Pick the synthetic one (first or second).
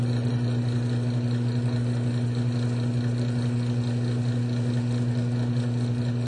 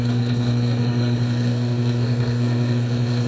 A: second